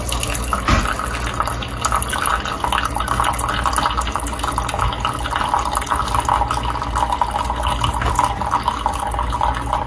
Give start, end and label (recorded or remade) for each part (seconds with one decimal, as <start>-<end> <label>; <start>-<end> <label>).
0.0-9.9 recorded